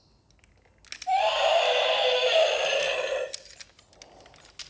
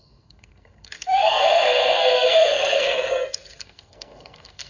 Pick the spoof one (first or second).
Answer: second